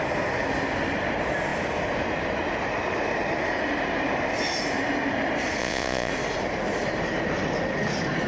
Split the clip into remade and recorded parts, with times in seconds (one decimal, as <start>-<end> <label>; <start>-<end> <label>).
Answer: 0.0-5.6 recorded; 5.6-6.1 remade; 6.1-8.3 recorded